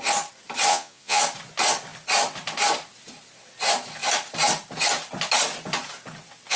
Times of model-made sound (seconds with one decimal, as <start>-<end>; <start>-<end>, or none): 0.7-1.2